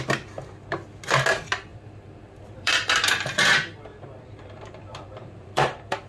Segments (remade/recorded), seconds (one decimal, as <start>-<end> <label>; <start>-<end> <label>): 0.0-1.7 recorded; 1.7-3.5 remade; 3.5-3.9 recorded; 3.9-6.1 remade